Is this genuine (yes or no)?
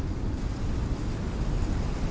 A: yes